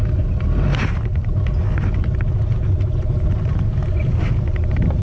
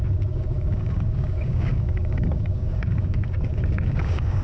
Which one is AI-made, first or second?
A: second